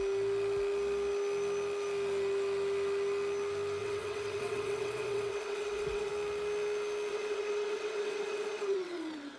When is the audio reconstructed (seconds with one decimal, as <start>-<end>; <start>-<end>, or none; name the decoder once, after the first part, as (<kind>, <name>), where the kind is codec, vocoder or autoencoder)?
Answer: 3.8-6.1 (vocoder, WaveNeXt); 7.1-9.4